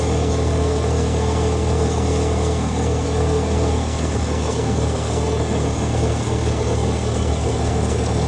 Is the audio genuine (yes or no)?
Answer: no